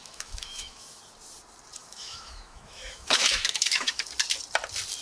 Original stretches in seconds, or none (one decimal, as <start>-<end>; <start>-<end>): 1.0-1.8; 4.1-5.0